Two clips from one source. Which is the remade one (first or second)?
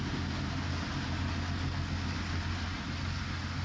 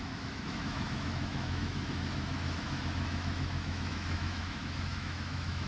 second